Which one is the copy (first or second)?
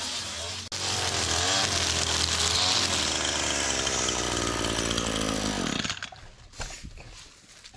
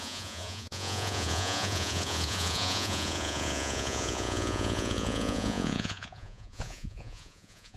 second